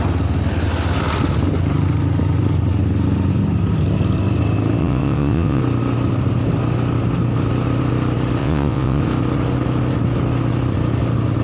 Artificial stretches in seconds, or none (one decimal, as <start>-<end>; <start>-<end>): 4.8-5.6; 8.4-9.0